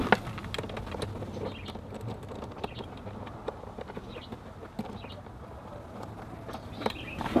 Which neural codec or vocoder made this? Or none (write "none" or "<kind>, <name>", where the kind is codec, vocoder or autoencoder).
none